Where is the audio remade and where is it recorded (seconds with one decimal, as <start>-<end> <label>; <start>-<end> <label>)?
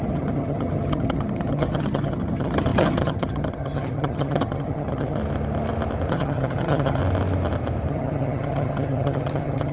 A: 0.0-5.2 remade; 5.2-6.1 recorded; 6.1-7.0 remade; 7.0-7.9 recorded; 7.9-9.7 remade